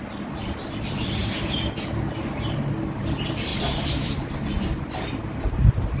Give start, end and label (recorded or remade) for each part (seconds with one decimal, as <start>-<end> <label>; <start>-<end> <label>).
0.0-1.2 recorded; 1.2-2.6 remade; 2.6-3.5 recorded; 3.5-4.3 remade; 4.3-6.0 recorded